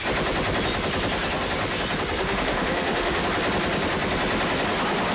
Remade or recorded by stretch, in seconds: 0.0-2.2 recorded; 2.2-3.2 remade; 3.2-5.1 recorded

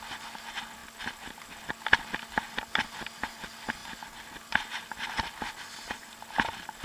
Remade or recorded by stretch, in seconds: 0.0-6.8 recorded

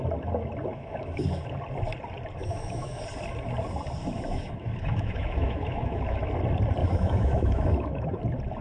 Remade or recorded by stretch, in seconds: 0.0-0.7 recorded; 0.7-1.4 remade; 1.4-2.4 recorded; 2.4-3.0 remade; 3.0-4.0 recorded; 4.0-6.3 remade; 6.3-6.8 recorded; 6.8-8.2 remade; 8.2-8.6 recorded

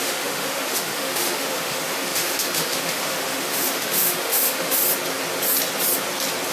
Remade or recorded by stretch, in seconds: 0.0-4.8 remade; 4.8-6.5 recorded

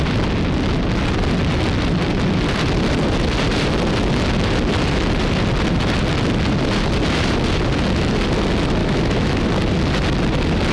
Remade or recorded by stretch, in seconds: 0.0-8.8 recorded; 8.8-9.4 remade; 9.4-10.7 recorded

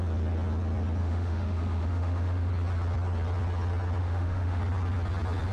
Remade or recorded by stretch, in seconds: 0.0-1.0 recorded; 1.0-2.5 remade; 2.5-4.0 recorded; 4.0-4.6 remade; 4.6-5.5 recorded

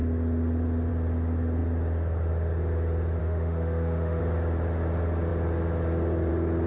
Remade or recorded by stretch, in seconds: 0.0-3.2 recorded; 3.2-4.2 remade; 4.2-6.7 recorded